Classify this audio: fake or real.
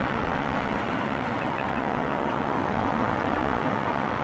fake